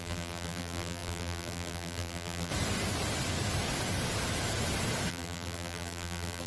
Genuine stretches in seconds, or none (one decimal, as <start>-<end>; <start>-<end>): 2.5-5.1